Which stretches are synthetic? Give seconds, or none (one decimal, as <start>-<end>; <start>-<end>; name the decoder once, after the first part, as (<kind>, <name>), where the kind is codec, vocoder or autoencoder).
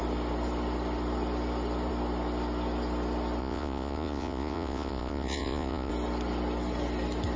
3.4-5.9 (vocoder, Vocos)